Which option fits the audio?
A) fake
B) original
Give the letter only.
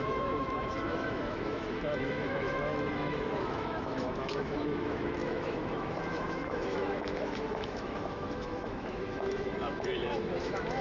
A